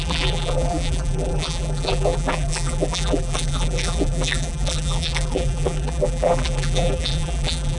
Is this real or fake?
fake